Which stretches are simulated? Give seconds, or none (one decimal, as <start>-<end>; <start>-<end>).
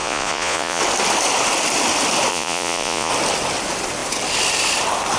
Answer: 0.0-0.8; 2.3-3.1